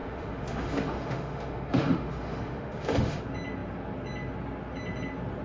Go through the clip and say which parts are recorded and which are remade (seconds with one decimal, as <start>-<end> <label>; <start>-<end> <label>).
0.0-3.2 remade; 3.2-5.4 recorded